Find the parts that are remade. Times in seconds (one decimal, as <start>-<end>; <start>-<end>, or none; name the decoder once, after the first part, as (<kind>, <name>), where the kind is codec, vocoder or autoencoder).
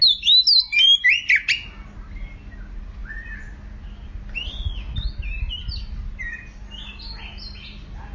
none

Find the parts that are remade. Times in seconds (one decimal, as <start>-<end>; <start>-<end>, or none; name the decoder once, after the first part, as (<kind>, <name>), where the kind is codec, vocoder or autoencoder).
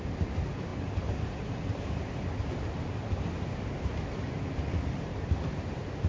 none